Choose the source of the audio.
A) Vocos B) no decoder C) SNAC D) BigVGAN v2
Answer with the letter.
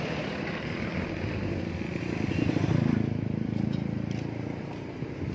D